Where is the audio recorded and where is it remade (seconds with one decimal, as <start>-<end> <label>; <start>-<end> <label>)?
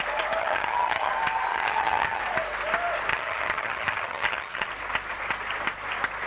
0.0-0.4 recorded; 0.4-1.1 remade; 1.1-1.5 recorded; 1.5-2.2 remade; 2.2-3.1 recorded; 3.1-4.7 remade; 4.7-6.3 recorded